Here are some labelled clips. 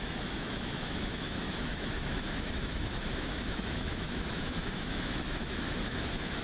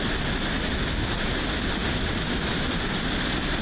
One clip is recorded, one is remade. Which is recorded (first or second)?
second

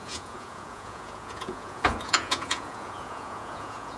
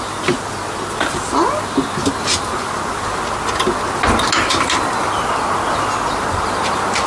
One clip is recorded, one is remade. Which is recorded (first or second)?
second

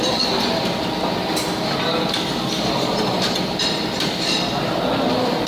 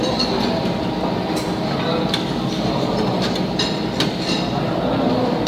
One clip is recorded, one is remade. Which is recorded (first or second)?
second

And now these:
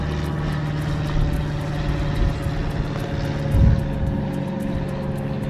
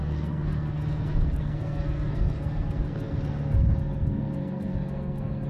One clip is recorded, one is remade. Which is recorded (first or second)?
first